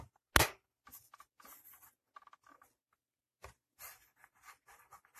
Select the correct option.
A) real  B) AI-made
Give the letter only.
A